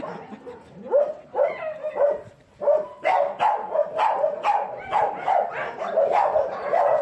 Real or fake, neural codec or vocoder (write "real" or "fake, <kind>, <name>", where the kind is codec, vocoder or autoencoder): real